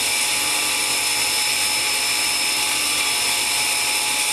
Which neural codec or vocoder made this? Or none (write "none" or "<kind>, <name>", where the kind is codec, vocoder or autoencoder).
none